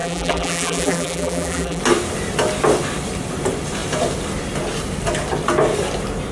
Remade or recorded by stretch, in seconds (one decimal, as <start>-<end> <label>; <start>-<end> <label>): 0.0-1.8 remade; 1.8-6.3 recorded